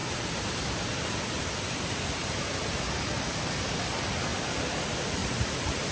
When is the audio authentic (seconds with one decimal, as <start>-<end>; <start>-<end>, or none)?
3.5-4.3; 4.8-5.2